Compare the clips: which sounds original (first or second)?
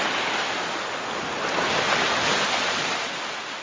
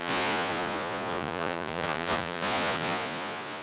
first